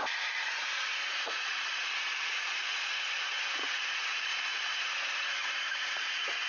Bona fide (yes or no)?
no